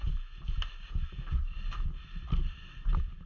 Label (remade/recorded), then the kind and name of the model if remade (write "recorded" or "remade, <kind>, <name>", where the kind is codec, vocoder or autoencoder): recorded